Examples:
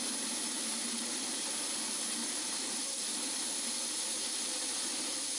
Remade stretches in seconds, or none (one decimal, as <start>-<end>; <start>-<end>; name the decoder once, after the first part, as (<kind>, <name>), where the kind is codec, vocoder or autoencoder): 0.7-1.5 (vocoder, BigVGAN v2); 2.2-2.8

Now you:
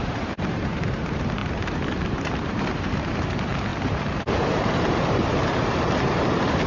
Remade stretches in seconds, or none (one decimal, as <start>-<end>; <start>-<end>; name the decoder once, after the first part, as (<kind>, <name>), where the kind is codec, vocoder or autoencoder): 0.0-6.7 (vocoder, BigVGAN v2)

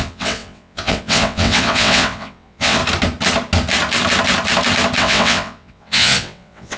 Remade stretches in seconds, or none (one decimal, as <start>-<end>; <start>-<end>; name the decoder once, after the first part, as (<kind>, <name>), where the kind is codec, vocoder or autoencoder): 0.0-2.8 (vocoder, WaveNeXt); 5.0-6.8

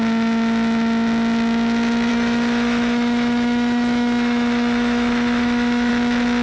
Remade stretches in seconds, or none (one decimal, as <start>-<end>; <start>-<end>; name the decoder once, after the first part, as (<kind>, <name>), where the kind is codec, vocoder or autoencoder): 2.1-5.9 (autoencoder, DAC-VAE)

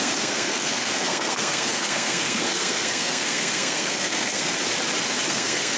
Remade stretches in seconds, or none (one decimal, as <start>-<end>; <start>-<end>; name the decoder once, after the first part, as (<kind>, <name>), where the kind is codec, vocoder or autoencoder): 0.0-4.5 (codec, SNAC); 5.3-5.8

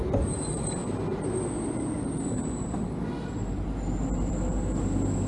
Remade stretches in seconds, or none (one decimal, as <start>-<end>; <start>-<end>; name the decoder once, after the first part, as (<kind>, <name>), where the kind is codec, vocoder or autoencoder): none

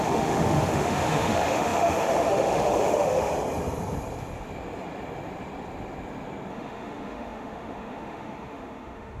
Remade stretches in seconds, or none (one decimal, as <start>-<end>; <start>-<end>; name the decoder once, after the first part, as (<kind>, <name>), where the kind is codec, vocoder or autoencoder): 0.0-3.3 (autoencoder, DAC-VAE); 6.5-9.2